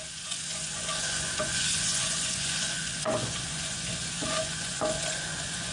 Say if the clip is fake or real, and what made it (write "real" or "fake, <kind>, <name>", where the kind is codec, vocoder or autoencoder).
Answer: fake, vocoder, Vocos